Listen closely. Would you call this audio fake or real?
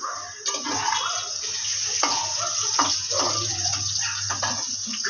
real